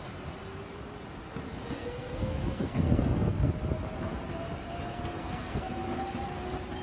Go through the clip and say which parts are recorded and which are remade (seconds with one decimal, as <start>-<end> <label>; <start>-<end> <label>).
0.0-1.8 recorded; 1.8-3.5 remade; 3.5-4.9 recorded; 4.9-5.7 remade; 5.7-6.8 recorded